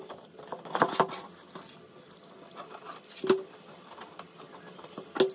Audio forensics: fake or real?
real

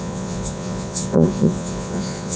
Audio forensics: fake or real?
fake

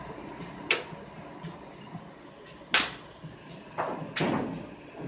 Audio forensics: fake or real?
real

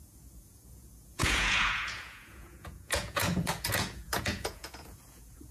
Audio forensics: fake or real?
fake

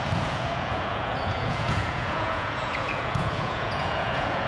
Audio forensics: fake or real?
fake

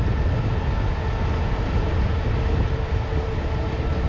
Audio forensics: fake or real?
real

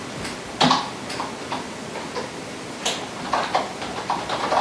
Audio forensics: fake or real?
real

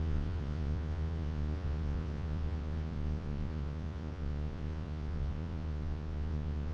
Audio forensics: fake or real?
fake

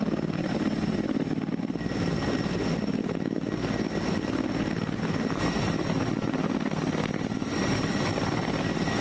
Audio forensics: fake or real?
real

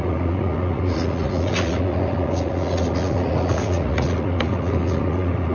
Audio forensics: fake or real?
fake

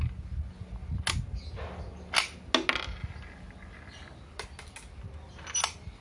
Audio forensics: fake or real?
real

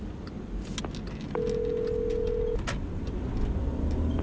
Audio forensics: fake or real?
real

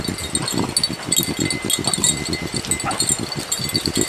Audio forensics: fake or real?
real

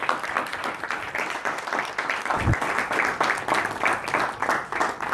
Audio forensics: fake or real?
real